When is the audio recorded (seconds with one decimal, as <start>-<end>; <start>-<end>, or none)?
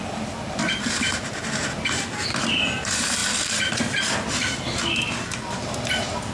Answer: 0.0-6.3